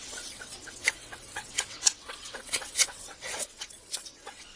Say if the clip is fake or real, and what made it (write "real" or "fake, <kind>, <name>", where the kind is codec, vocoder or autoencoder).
fake, vocoder, WaveNeXt